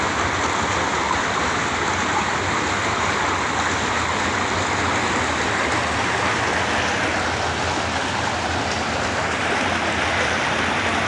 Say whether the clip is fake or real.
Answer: real